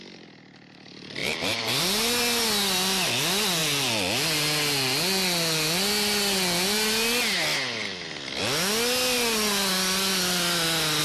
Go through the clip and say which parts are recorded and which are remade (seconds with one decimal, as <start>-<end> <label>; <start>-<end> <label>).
0.0-1.2 recorded; 1.2-1.8 remade; 1.8-11.0 recorded